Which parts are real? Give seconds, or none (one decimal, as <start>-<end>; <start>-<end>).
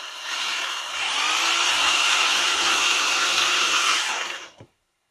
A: 1.1-1.7